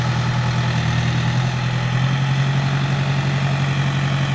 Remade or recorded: recorded